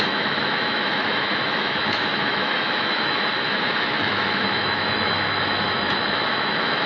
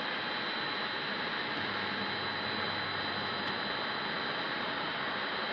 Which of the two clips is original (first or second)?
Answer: second